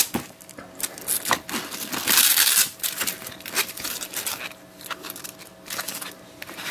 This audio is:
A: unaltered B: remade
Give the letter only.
A